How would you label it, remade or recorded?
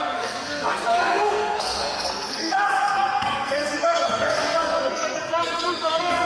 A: remade